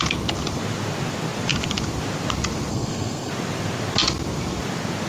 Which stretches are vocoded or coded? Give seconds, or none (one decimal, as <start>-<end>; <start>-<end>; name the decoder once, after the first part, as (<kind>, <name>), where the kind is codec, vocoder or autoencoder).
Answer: 2.7-3.3 (codec, SNAC)